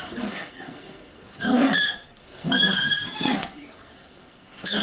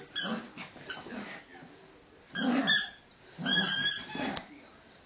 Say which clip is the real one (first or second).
second